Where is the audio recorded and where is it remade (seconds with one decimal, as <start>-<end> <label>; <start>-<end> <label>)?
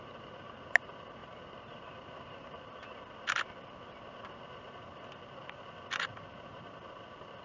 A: 0.0-7.4 recorded